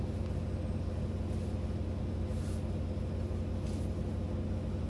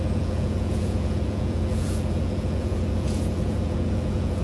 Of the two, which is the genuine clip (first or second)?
first